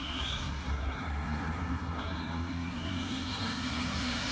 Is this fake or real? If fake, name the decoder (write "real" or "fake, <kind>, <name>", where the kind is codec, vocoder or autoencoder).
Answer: fake, codec, SNAC